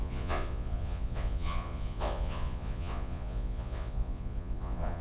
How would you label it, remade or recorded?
remade